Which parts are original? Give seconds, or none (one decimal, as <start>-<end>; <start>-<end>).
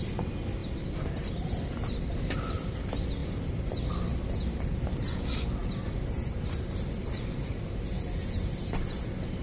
0.0-0.6; 2.1-3.2; 4.1-9.4